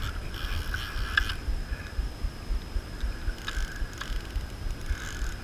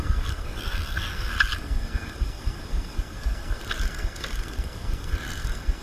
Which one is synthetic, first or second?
second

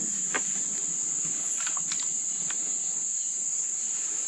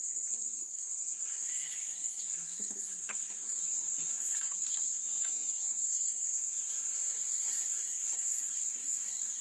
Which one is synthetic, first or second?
second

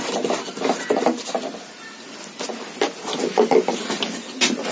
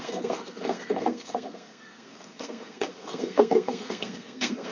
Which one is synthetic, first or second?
second